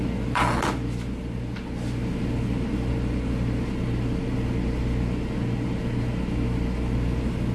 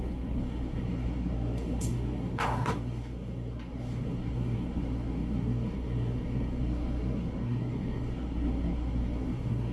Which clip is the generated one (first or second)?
second